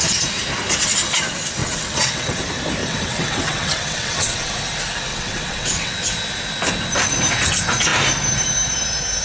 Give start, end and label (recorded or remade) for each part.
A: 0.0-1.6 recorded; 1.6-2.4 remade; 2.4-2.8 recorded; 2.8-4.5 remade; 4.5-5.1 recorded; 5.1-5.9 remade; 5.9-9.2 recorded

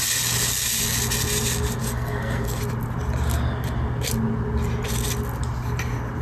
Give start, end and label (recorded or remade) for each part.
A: 0.0-1.8 recorded; 1.8-2.6 remade; 2.6-6.2 recorded

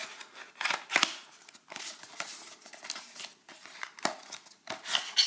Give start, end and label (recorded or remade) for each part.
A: 0.0-5.3 recorded

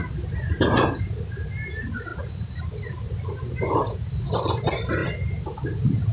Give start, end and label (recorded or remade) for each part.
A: 0.0-2.1 recorded; 2.1-4.1 remade; 4.1-6.1 recorded

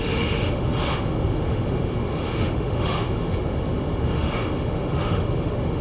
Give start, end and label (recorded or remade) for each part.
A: 0.0-5.8 remade

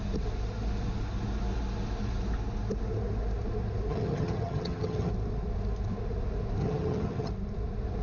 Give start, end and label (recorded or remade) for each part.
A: 0.0-3.9 recorded; 3.9-5.1 remade; 5.1-6.6 recorded; 6.6-7.3 remade; 7.3-8.0 recorded

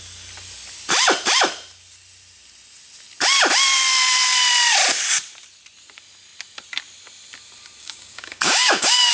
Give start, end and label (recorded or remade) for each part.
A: 0.0-7.8 recorded; 7.8-9.1 remade